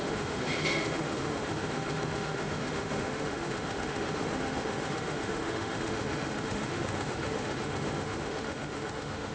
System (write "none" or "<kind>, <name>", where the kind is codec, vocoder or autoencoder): autoencoder, DAC-VAE